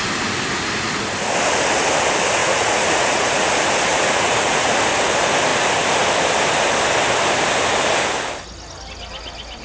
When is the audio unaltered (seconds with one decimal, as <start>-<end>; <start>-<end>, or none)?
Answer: 0.0-2.4; 3.5-3.9; 4.8-9.6